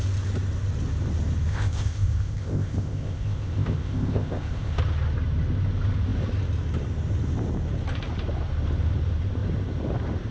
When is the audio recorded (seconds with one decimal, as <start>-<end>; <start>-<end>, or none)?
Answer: 0.0-1.5; 4.8-10.3